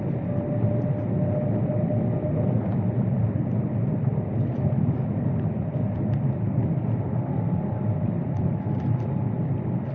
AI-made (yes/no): no